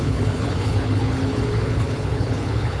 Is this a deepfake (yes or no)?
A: yes